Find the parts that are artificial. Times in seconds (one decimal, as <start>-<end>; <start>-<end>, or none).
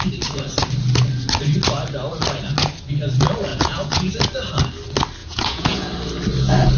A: 3.5-4.1; 5.2-5.9